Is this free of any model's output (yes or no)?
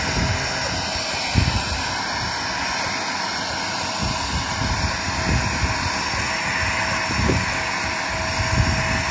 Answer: yes